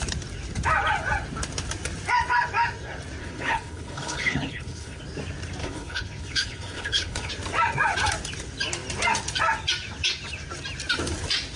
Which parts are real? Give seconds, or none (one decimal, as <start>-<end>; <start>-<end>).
0.0-3.2; 5.0-5.6; 7.3-11.6